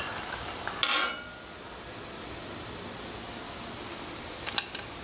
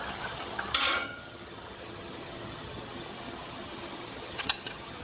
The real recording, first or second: first